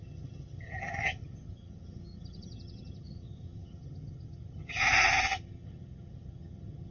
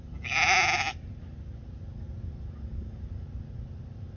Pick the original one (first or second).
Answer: second